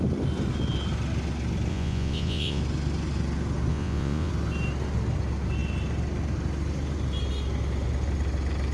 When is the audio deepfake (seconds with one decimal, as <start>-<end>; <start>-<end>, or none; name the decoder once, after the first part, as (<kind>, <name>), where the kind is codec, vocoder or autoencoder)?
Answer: 1.7-2.6 (vocoder, Vocos); 3.7-4.3

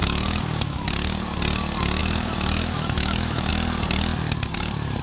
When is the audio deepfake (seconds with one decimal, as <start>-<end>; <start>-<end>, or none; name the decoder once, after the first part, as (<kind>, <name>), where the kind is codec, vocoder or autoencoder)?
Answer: 0.0-0.9 (autoencoder, DAC-VAE); 2.0-3.5

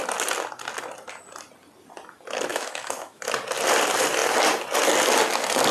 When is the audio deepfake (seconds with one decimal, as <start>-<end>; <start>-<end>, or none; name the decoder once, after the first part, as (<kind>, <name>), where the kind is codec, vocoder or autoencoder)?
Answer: 2.5-3.2 (autoencoder, DAC-VAE)

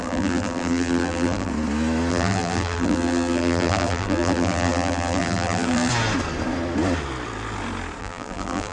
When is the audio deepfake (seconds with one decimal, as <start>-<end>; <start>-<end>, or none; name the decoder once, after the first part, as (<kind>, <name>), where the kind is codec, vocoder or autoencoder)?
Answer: 0.0-1.5 (vocoder, BigVGAN v2); 2.1-5.9; 8.0-8.7

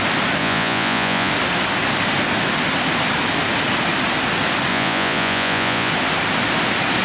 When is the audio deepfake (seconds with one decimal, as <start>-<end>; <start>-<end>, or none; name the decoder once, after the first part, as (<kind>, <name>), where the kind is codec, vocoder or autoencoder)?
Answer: 0.4-1.3 (vocoder, Vocos); 4.7-5.9

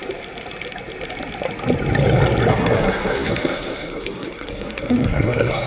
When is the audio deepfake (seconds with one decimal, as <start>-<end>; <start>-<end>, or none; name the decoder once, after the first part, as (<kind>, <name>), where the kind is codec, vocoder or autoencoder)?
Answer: 2.5-5.7 (codec, SNAC)

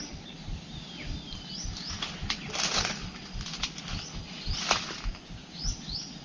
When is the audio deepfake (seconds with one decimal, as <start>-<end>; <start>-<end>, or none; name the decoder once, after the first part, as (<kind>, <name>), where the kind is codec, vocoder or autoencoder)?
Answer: 5.1-5.6 (codec, DAC)